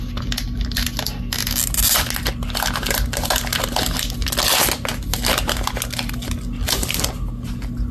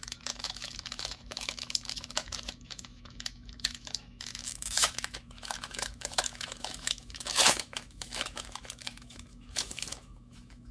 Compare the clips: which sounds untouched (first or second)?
first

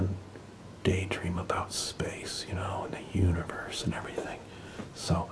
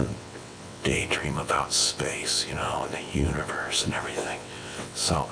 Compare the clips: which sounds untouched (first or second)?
first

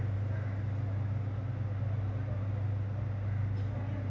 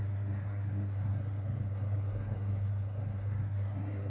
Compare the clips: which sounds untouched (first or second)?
first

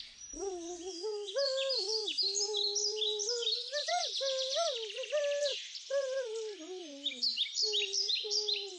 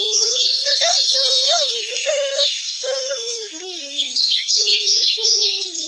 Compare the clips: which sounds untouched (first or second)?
first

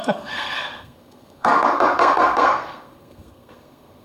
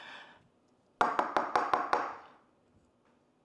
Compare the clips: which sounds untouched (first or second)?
second